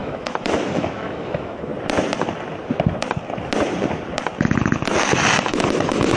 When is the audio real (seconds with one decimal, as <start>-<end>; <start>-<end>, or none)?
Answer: 1.7-5.4